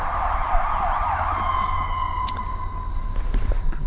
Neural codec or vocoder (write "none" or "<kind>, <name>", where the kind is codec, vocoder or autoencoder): none